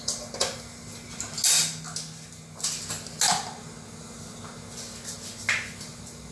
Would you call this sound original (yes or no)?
yes